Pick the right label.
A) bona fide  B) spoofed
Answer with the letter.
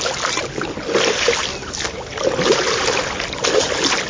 A